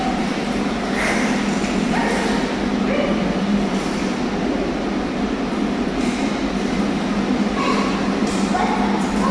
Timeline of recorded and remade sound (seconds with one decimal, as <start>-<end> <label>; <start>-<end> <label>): 0.0-9.3 recorded